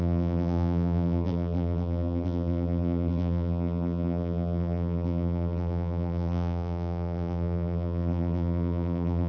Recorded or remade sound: remade